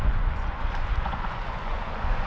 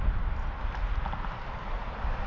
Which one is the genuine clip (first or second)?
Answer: second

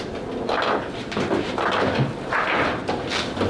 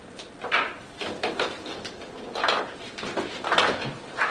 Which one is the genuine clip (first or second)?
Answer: first